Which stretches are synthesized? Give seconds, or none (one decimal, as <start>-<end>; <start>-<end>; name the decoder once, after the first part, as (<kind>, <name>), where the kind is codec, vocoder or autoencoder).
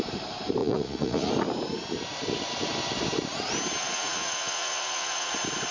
0.6-1.3 (vocoder, Vocos); 3.8-5.3